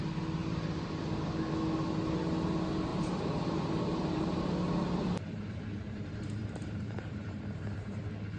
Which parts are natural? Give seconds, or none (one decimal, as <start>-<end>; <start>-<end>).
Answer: 0.0-0.4; 1.3-2.9; 4.5-5.0; 8.0-8.4